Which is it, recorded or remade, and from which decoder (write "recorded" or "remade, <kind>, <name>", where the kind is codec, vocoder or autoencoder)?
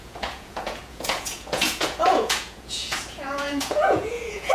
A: remade, vocoder, Vocos